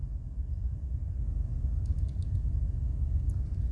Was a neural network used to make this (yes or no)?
no